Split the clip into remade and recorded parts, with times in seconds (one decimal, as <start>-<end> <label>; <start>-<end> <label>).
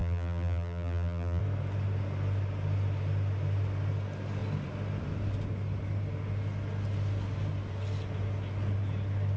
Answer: 0.0-1.4 remade; 1.4-9.4 recorded